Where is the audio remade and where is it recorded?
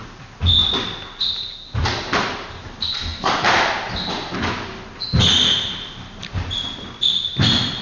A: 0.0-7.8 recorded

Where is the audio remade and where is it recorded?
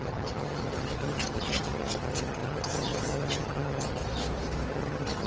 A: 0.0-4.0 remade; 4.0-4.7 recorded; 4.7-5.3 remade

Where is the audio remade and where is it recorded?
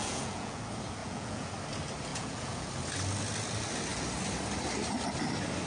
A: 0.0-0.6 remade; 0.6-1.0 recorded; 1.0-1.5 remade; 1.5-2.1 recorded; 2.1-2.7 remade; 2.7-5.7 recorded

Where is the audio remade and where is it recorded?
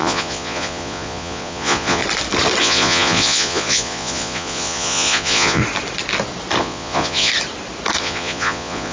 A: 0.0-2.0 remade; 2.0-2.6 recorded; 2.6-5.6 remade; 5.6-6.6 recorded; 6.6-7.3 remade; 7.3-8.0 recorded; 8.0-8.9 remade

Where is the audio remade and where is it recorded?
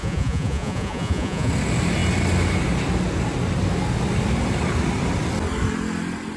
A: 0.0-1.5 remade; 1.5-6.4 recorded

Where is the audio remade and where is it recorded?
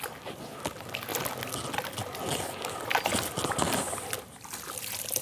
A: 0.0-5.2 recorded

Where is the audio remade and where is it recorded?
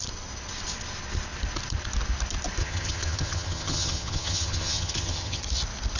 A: 0.0-2.6 recorded; 2.6-5.4 remade; 5.4-6.0 recorded